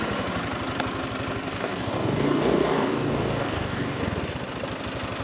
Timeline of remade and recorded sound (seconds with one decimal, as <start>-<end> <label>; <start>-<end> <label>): 0.0-1.5 recorded; 1.5-4.0 remade; 4.0-5.2 recorded